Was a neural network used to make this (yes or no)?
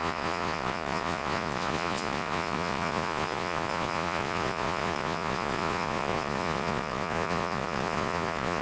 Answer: yes